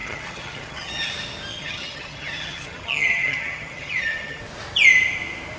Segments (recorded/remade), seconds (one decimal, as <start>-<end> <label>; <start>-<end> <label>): 0.0-1.1 remade; 1.1-1.5 recorded; 1.5-4.4 remade; 4.4-5.6 recorded